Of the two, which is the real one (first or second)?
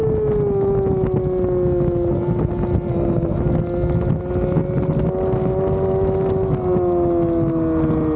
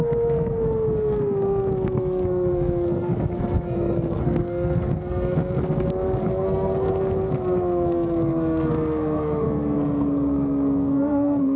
first